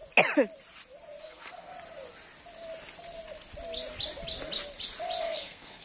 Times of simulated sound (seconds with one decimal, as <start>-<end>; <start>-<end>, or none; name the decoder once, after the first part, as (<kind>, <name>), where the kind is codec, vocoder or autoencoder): 1.2-1.7 (codec, SNAC); 5.2-5.8